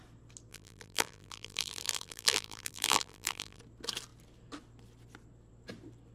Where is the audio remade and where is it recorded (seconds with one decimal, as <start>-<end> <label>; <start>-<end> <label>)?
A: 0.0-0.5 recorded; 0.5-3.6 remade; 3.6-6.1 recorded